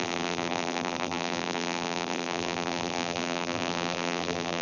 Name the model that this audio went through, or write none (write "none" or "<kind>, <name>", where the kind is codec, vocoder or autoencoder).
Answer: vocoder, BigVGAN v2